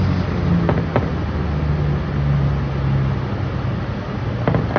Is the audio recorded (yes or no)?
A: yes